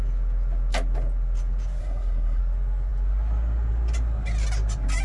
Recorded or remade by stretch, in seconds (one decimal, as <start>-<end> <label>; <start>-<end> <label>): 0.0-1.8 recorded; 1.8-2.4 remade; 2.4-5.0 recorded